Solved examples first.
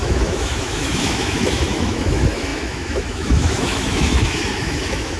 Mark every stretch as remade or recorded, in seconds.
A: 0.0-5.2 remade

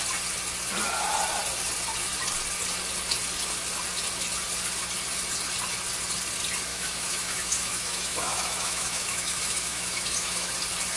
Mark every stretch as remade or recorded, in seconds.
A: 0.0-6.7 recorded; 6.7-10.5 remade; 10.5-11.0 recorded

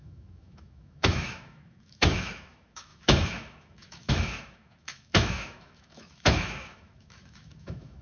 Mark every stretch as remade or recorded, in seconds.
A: 0.0-8.0 remade

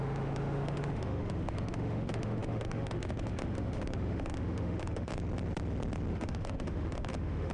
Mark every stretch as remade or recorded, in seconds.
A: 0.0-5.1 remade; 5.1-6.1 recorded; 6.1-7.5 remade

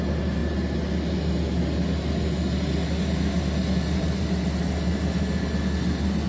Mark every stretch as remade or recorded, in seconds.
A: 0.0-6.3 recorded

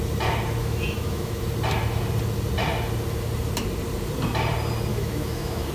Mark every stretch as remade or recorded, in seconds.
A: 0.0-0.6 recorded; 0.6-1.4 remade; 1.4-4.9 recorded; 4.9-5.7 remade

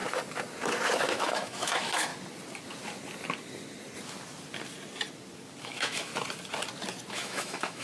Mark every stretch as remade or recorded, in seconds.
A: 0.0-1.1 recorded; 1.1-2.1 remade; 2.1-5.6 recorded; 5.6-6.1 remade; 6.1-7.1 recorded; 7.1-7.8 remade

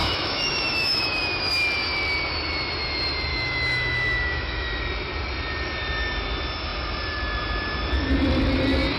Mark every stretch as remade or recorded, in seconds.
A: 0.0-1.5 remade; 1.5-3.3 recorded; 3.3-4.8 remade; 4.8-9.0 recorded